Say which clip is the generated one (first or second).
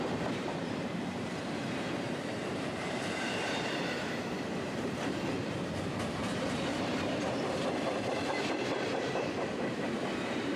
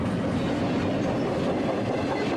first